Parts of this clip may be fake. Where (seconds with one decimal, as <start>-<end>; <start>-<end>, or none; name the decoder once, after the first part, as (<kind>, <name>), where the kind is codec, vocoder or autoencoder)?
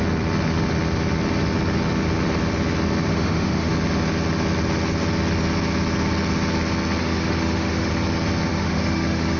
3.1-3.7 (autoencoder, DAC-VAE); 7.0-7.9; 8.5-9.4